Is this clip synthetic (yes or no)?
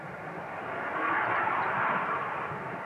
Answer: no